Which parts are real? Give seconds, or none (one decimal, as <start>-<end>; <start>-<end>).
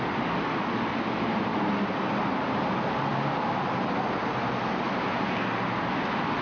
0.0-6.4